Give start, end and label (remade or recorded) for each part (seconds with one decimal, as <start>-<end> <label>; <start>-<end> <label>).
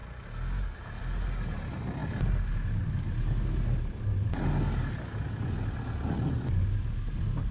0.0-7.5 recorded